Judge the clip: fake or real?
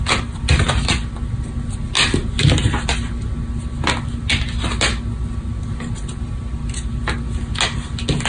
real